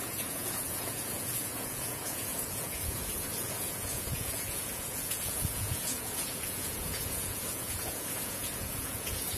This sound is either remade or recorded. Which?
remade